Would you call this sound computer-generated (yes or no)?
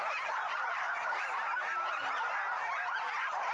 no